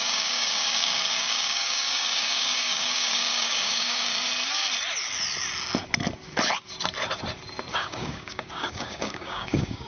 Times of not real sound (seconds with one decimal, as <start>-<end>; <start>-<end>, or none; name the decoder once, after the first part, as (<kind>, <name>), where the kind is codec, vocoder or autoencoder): 0.0-4.1 (codec, DAC); 7.7-9.9